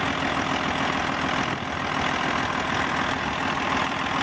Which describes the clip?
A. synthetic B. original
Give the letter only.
B